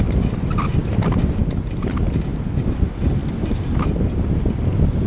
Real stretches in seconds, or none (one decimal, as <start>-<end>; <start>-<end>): 0.0-0.8; 1.4-2.3; 2.8-3.2; 4.4-5.1